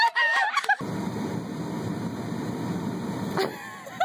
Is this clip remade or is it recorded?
recorded